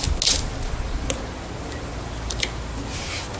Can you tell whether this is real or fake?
real